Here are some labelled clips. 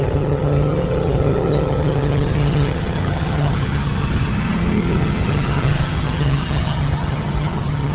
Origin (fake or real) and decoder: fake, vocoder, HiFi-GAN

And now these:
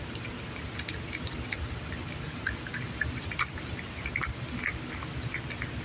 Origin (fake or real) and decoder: real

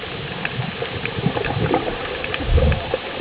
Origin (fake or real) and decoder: real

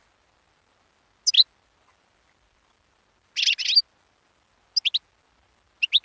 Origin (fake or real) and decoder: real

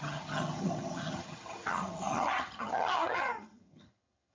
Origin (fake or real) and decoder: fake, vocoder, HiFi-GAN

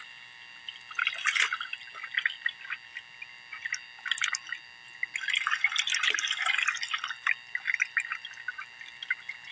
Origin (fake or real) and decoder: real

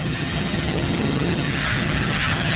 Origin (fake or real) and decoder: fake, vocoder, HiFi-GAN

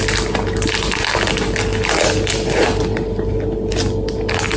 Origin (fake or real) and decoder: real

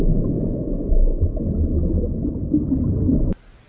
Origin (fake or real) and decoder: real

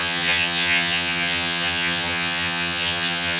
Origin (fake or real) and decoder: fake, vocoder, HiFi-GAN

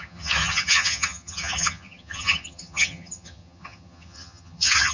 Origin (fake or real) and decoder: fake, vocoder, HiFi-GAN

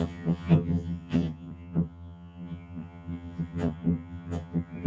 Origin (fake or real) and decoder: fake, vocoder, HiFi-GAN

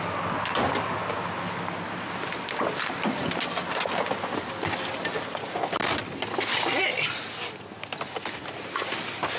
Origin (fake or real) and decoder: real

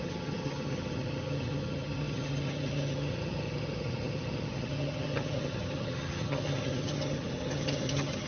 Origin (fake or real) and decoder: fake, vocoder, HiFi-GAN